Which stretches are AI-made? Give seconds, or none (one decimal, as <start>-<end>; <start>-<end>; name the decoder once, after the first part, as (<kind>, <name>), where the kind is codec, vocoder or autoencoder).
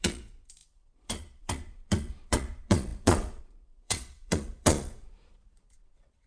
0.0-6.3 (vocoder, Vocos)